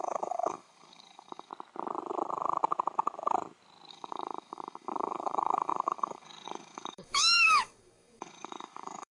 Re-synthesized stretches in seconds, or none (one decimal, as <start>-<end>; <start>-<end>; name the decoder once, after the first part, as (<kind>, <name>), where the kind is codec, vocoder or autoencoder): 0.0-1.5 (codec, DAC); 3.9-9.1